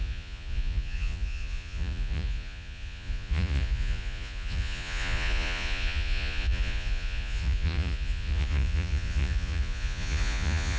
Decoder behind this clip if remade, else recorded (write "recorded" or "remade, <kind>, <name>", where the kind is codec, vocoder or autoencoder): remade, vocoder, Vocos